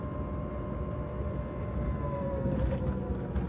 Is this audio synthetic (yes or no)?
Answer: no